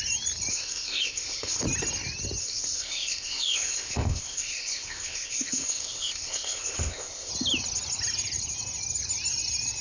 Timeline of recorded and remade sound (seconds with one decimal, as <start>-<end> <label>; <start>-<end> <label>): 0.0-0.5 recorded; 0.5-1.6 remade; 1.6-2.4 recorded; 2.4-7.3 remade; 7.3-9.8 recorded